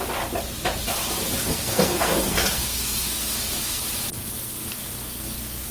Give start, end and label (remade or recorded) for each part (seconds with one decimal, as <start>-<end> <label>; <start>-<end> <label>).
0.0-1.4 recorded; 1.4-3.8 remade; 3.8-4.2 recorded; 4.2-5.7 remade